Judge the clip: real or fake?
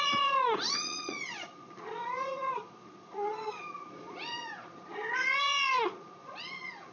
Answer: fake